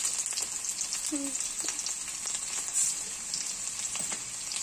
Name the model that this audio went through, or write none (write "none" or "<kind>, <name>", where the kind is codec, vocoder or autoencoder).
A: none